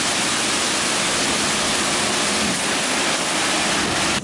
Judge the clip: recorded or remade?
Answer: recorded